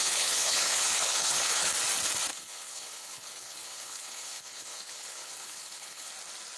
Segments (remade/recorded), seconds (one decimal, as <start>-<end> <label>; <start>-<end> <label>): 0.0-1.7 remade; 1.7-2.3 recorded; 2.3-6.1 remade; 6.1-6.6 recorded